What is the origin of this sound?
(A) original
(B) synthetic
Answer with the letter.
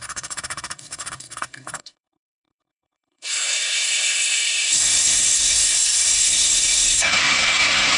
B